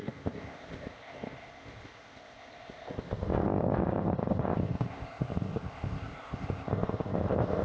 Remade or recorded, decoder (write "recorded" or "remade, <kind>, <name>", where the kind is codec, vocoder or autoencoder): remade, codec, ZipCodec